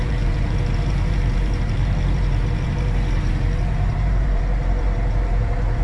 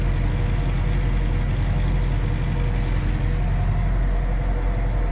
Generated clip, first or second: first